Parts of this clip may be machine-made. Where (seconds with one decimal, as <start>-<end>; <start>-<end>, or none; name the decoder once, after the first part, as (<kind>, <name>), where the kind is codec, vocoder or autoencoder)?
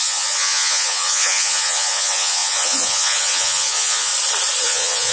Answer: 0.0-4.1 (vocoder, Vocos); 4.6-5.1